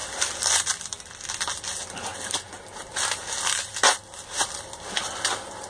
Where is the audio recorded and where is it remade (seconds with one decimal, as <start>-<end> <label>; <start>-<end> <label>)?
0.0-5.7 recorded